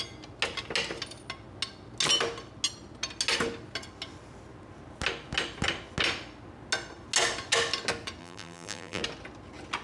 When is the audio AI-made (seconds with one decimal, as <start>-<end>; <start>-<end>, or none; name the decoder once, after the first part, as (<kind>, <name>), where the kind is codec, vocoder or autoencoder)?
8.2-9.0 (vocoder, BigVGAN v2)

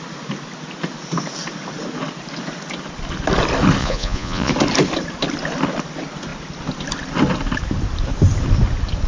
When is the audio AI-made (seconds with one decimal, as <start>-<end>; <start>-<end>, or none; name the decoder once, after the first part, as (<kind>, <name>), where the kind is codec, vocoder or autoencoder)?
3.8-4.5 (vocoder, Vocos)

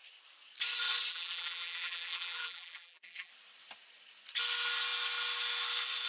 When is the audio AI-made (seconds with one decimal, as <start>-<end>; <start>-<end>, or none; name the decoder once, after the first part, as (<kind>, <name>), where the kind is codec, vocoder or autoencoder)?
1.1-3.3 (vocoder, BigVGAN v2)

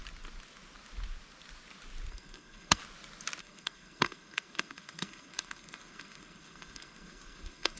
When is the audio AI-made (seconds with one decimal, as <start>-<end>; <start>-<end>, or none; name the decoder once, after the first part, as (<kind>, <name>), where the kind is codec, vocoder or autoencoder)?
2.1-2.8 (codec, SNAC); 3.4-7.8